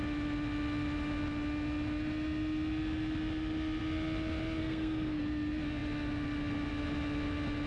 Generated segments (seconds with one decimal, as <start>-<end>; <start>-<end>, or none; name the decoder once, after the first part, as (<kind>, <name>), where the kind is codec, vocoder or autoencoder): 4.6-5.2 (codec, SNAC)